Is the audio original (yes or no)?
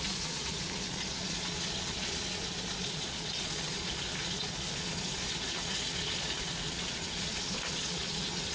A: no